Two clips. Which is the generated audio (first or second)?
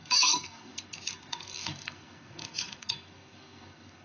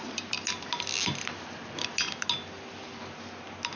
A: first